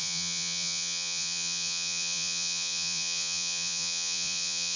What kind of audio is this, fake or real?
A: fake